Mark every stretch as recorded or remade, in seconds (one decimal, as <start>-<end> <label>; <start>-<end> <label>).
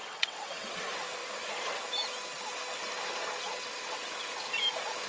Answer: 0.0-0.7 remade; 0.7-5.1 recorded